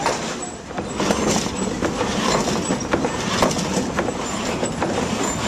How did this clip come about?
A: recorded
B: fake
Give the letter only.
A